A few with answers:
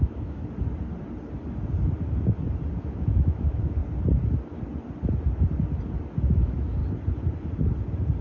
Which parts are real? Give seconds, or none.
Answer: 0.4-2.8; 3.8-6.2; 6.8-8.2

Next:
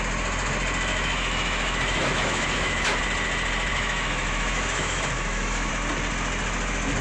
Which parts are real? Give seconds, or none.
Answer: 0.0-0.9; 3.0-3.7; 5.7-7.0

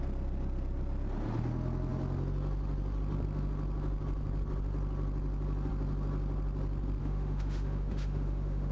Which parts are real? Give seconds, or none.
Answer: 0.0-7.0

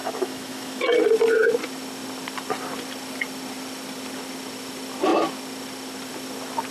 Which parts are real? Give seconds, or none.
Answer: 0.8-6.7

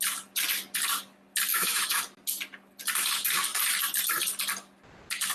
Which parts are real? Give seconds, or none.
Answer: 0.0-1.5; 2.0-5.3